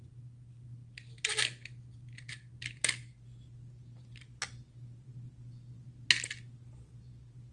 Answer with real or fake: real